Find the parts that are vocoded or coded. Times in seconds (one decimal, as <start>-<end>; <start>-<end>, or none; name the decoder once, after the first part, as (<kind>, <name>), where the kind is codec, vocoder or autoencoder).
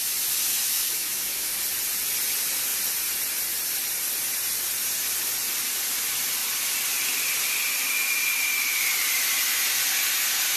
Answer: 0.5-1.5 (autoencoder, DAC-VAE)